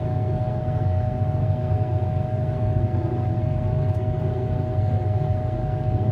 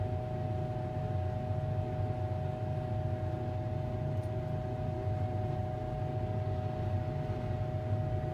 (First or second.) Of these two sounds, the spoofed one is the first